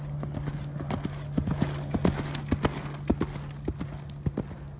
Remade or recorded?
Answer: recorded